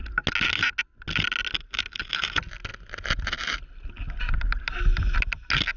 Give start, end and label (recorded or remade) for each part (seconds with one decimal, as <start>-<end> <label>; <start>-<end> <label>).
0.0-5.8 recorded